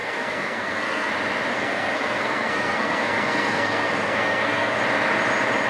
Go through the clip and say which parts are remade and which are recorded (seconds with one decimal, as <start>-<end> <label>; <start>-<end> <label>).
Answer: 0.0-1.1 remade; 1.1-1.5 recorded; 1.5-4.8 remade; 4.8-5.7 recorded